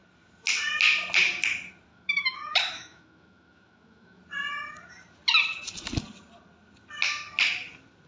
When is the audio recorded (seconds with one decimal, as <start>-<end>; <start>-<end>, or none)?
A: 0.0-1.9; 4.2-8.1